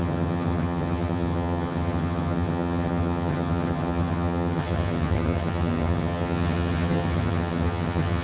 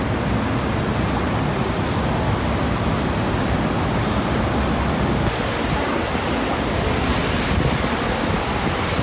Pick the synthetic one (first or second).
first